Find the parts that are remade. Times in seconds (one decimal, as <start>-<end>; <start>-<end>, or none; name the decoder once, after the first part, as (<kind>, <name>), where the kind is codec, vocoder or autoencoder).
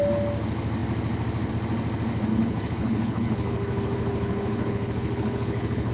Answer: 2.3-5.9 (codec, HILCodec)